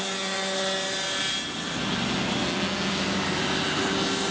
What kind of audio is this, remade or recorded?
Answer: recorded